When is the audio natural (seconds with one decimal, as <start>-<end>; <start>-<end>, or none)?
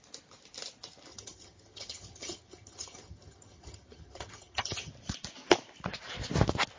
0.0-1.1; 4.9-6.8